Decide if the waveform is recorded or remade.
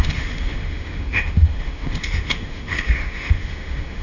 remade